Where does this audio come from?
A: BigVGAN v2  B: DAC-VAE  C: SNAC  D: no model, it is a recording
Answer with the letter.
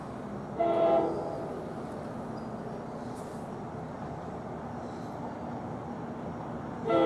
D